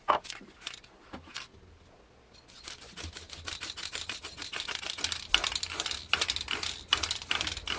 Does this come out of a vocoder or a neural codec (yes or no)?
no